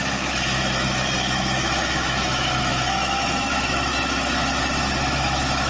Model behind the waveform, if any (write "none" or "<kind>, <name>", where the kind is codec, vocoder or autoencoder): autoencoder, DAC-VAE